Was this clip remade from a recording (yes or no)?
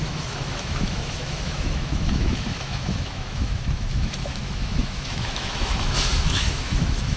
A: yes